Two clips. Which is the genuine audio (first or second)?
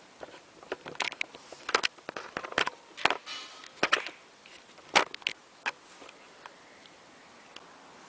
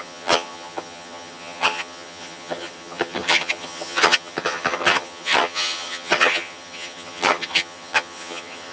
first